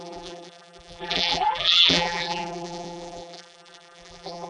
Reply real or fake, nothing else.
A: fake